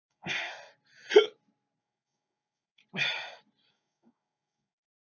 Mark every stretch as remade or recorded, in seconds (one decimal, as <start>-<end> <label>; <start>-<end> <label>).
0.0-0.5 remade; 0.5-1.8 recorded; 1.8-2.8 remade; 2.8-3.7 recorded; 3.7-5.1 remade